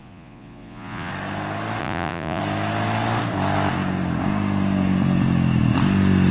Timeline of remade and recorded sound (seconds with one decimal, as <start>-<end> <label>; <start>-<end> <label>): 0.0-1.1 remade; 1.1-1.8 recorded; 1.8-2.4 remade; 2.4-6.3 recorded